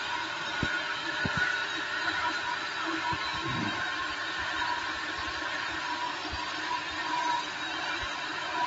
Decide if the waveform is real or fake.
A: fake